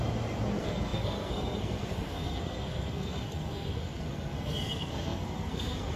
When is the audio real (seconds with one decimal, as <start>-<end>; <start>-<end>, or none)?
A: 0.0-0.5